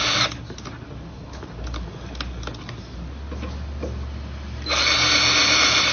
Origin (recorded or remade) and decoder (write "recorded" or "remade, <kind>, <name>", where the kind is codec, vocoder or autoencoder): recorded